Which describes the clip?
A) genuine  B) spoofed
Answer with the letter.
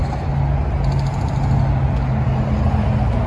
A